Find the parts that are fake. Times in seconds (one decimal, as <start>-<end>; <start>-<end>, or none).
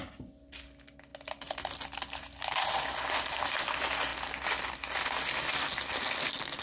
none